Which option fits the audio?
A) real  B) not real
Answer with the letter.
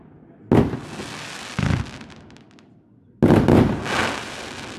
A